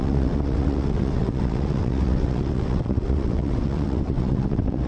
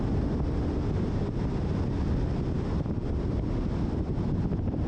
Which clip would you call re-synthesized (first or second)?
first